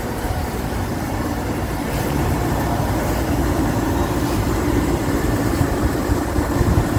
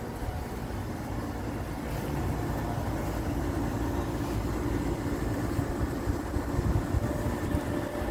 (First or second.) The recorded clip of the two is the second